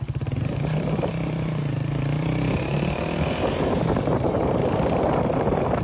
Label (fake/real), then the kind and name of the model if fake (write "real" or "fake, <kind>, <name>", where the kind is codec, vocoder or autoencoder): fake, vocoder, BigVGAN v2